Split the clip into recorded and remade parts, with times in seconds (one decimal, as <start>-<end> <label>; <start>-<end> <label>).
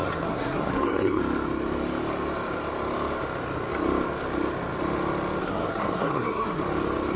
0.0-1.2 remade; 1.2-5.4 recorded; 5.4-6.6 remade; 6.6-7.2 recorded